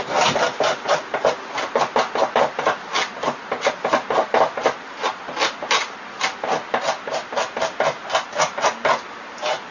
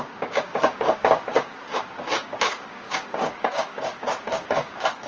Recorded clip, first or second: first